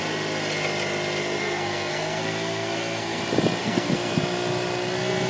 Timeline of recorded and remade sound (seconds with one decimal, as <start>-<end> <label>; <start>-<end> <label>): 0.0-1.4 recorded; 1.4-3.2 remade; 3.2-3.6 recorded; 3.6-4.1 remade; 4.1-5.3 recorded